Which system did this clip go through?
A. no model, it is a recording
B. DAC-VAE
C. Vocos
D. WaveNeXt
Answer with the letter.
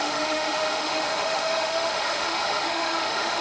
B